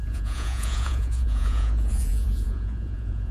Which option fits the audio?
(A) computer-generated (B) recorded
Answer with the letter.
A